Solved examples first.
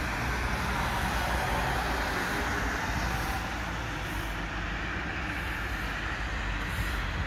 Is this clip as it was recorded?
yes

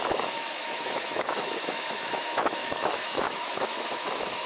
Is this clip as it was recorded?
no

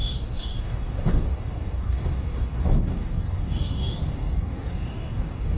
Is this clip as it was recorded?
no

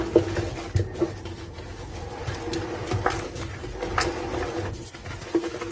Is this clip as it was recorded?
yes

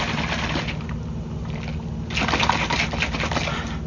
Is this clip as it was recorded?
yes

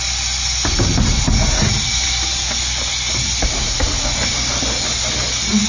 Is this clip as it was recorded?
yes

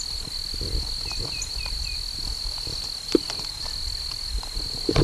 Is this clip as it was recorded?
yes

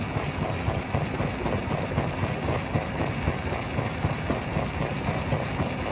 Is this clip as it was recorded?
yes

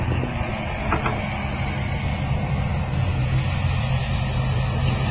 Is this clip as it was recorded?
yes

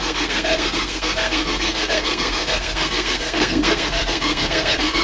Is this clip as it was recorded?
no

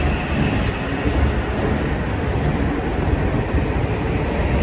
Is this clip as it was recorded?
yes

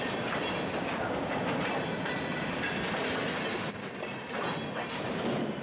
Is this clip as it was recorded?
yes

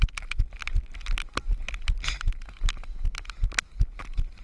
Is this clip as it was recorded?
yes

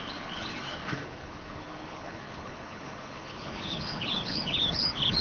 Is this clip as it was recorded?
no